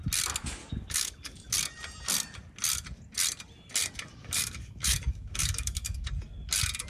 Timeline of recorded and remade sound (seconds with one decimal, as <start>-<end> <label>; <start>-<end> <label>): 0.0-0.6 recorded; 0.6-1.5 remade; 1.5-4.2 recorded; 4.2-6.1 remade; 6.1-6.9 recorded